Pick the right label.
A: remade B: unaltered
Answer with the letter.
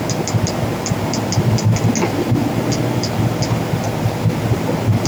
B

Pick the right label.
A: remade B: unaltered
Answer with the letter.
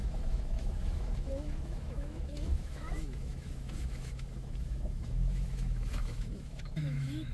A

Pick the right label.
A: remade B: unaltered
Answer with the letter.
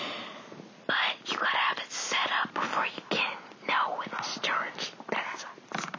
B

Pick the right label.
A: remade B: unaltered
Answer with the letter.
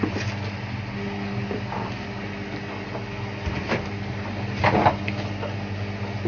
B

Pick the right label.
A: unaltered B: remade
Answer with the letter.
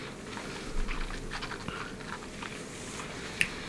A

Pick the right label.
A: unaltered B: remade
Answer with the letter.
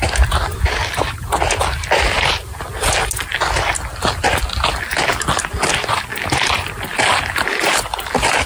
A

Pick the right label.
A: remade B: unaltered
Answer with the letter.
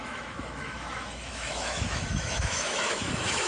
A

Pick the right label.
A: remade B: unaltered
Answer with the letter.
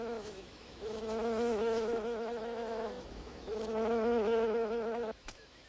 A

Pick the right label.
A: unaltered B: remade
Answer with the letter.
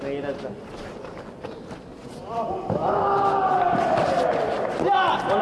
A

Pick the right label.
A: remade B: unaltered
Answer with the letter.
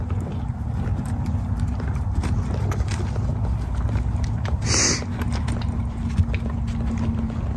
B